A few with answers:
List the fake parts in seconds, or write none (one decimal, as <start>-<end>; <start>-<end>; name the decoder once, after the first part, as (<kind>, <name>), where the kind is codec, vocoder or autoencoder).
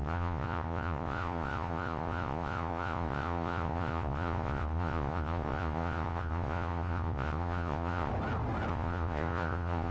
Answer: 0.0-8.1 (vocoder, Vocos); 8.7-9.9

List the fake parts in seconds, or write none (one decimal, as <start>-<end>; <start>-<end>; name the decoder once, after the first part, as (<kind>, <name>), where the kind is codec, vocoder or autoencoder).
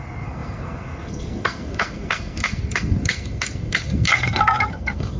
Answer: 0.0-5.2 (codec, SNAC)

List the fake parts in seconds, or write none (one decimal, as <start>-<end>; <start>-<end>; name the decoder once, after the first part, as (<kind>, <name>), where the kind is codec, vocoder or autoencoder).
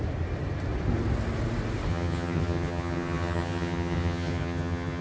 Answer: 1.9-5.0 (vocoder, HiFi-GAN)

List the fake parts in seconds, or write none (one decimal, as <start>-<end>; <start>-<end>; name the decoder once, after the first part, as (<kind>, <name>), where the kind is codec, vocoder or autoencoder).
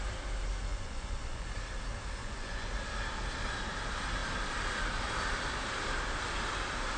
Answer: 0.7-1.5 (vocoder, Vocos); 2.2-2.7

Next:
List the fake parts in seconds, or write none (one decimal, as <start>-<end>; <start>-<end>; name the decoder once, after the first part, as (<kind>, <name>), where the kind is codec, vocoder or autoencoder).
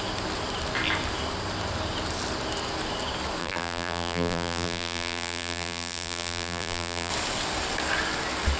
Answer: 3.4-7.1 (vocoder, BigVGAN v2)